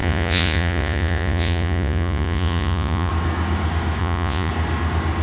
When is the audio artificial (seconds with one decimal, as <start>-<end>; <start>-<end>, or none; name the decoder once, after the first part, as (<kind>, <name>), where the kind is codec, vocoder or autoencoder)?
0.0-3.1 (vocoder, Vocos); 4.0-4.5